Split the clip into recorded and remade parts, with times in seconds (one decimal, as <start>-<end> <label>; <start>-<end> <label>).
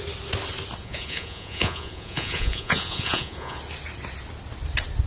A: 0.0-0.8 recorded; 0.8-3.6 remade; 3.6-5.1 recorded